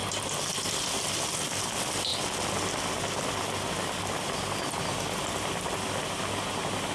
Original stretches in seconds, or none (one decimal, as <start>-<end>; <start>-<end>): 0.0-6.9